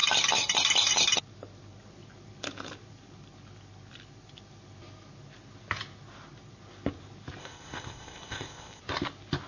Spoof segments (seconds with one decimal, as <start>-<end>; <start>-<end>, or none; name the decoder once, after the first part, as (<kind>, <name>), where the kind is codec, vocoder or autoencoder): 7.4-8.8 (codec, ZipCodec)